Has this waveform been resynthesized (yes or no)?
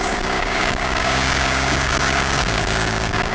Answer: yes